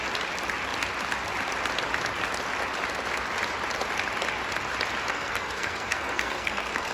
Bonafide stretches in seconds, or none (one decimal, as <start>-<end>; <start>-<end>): 0.0-5.1